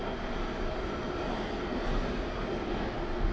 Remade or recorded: recorded